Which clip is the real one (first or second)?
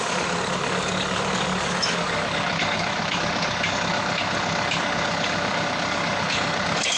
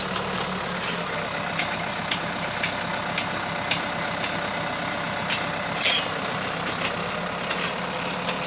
second